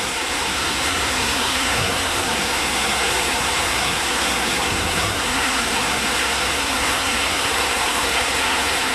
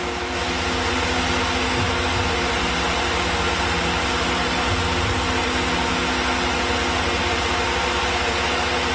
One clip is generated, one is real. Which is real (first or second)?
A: second